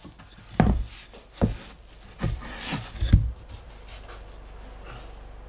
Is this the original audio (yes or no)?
yes